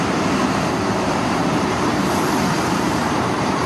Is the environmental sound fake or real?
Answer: fake